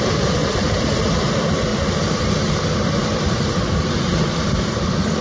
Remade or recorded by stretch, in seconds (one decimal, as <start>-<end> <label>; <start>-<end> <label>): 0.0-0.4 recorded; 0.4-1.1 remade; 1.1-1.7 recorded; 1.7-4.8 remade; 4.8-5.2 recorded